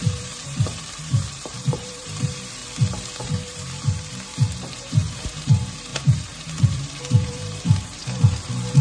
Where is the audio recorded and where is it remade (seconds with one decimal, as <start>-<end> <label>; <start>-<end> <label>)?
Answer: 0.0-2.6 remade; 2.6-3.2 recorded; 3.2-8.8 remade